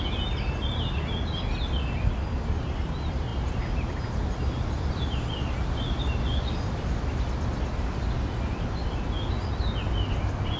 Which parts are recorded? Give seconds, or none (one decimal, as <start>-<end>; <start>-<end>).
0.0-10.6